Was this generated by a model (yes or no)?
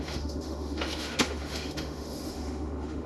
yes